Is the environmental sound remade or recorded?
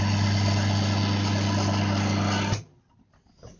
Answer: recorded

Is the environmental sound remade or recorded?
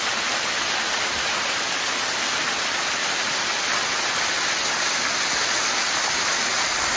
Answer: recorded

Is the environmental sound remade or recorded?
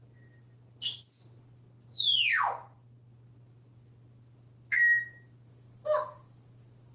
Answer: recorded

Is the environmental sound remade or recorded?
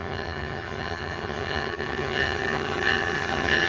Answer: remade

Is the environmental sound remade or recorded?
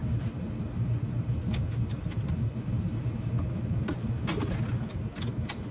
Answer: recorded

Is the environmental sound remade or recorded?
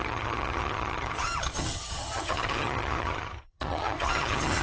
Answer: remade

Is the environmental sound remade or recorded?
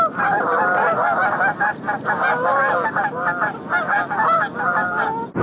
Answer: recorded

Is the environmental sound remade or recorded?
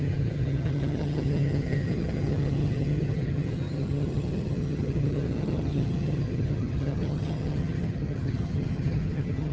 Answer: remade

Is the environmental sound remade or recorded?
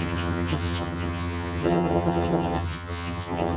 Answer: remade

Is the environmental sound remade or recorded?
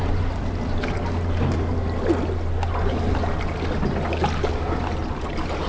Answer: recorded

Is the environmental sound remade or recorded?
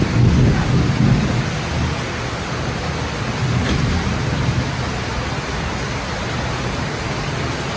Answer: recorded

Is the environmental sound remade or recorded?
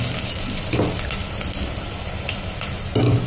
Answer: recorded